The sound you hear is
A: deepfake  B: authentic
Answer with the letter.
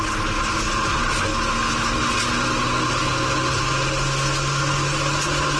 B